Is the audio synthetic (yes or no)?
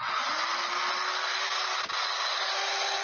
no